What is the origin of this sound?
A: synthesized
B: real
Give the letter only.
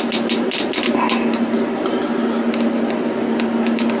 B